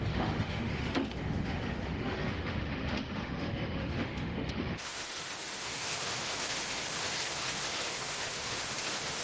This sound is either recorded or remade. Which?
remade